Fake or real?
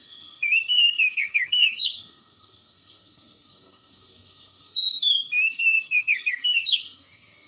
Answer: fake